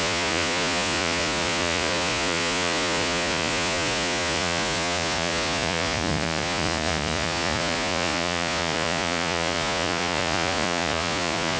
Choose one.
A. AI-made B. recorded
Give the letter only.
A